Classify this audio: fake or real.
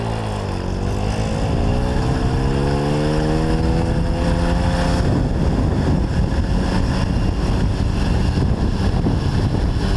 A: real